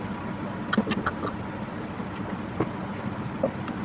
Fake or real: real